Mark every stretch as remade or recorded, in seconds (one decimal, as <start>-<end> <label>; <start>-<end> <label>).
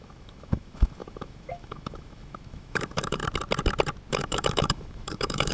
0.0-3.2 remade; 3.2-4.1 recorded; 4.1-5.5 remade